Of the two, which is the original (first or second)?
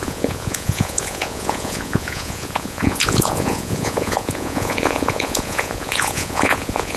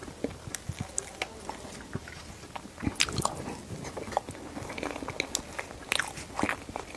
second